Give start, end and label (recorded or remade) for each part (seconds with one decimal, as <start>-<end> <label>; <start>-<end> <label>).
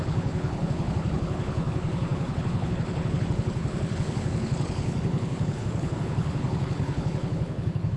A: 0.0-8.0 remade